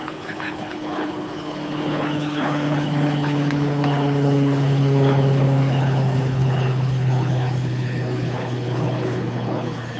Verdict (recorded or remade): remade